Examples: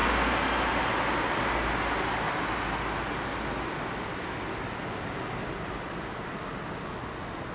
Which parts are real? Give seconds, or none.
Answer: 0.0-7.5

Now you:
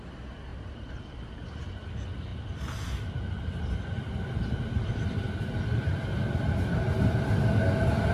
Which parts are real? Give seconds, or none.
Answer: 0.0-0.5; 1.6-8.1

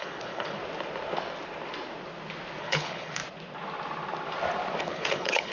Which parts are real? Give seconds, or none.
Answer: 0.6-2.6; 3.2-4.8

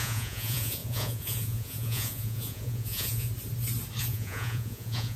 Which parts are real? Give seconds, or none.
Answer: 3.3-4.0

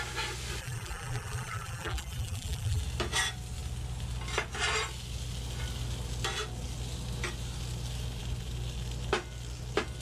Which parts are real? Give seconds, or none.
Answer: 0.0-0.6; 2.8-10.0

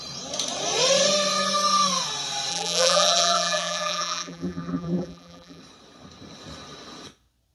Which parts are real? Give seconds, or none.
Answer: 0.0-2.5; 5.6-7.5

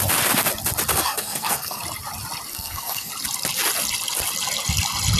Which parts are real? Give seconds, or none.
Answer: 0.0-0.9; 1.8-2.5; 3.1-5.2